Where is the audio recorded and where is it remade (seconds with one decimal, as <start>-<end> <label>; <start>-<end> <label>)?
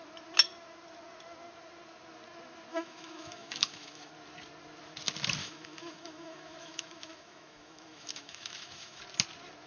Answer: 0.0-2.7 recorded; 2.7-4.1 remade; 4.1-5.4 recorded; 5.4-9.0 remade; 9.0-9.7 recorded